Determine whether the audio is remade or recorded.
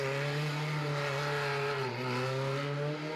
recorded